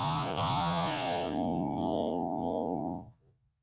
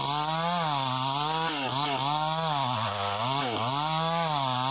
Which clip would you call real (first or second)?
second